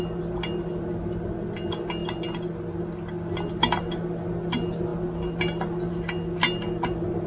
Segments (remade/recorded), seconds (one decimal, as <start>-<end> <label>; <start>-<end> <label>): 0.0-7.3 recorded